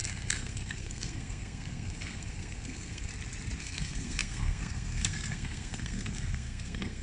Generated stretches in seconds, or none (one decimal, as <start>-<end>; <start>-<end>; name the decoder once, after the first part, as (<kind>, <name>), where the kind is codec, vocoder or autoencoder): 0.0-3.1 (codec, SNAC); 3.6-7.0